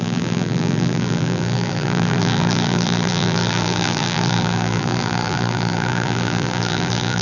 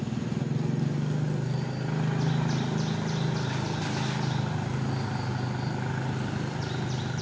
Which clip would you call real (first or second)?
second